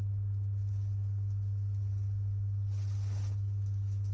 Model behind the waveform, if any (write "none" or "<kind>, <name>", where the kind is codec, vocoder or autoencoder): none